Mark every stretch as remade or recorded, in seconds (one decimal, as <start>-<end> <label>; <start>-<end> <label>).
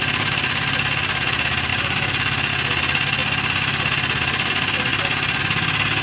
0.0-1.7 recorded; 1.7-2.5 remade; 2.5-6.0 recorded